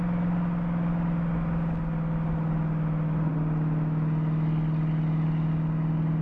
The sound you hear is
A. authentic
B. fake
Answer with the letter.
A